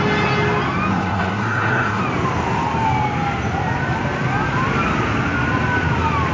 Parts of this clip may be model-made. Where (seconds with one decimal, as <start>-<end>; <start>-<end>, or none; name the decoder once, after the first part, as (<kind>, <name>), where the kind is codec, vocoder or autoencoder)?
0.9-2.0 (codec, SNAC)